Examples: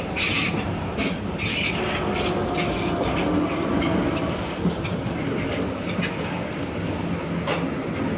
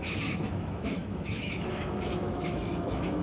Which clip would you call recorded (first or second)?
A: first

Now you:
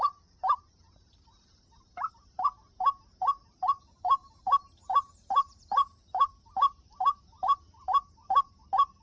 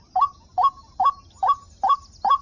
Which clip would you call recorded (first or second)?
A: second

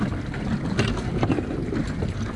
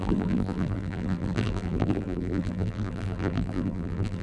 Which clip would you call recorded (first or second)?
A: first